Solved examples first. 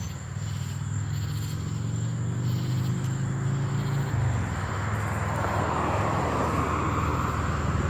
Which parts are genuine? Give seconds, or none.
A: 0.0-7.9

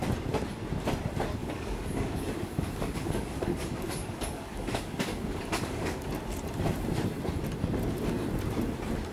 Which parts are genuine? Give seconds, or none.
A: 0.0-1.4; 6.1-9.1

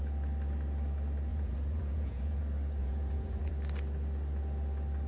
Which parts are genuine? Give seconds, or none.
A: 0.0-1.3; 2.4-2.8; 3.5-5.1